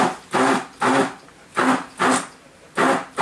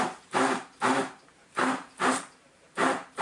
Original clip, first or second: first